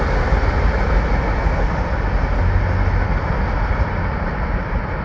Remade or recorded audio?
recorded